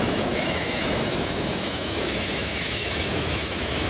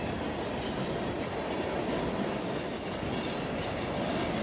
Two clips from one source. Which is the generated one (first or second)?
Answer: first